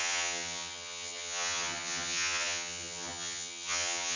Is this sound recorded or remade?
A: remade